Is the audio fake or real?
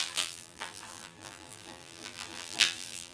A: fake